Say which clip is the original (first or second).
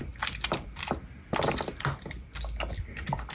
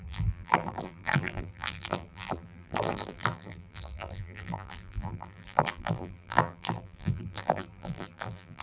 first